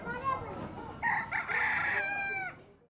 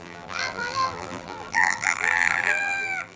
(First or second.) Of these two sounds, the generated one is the second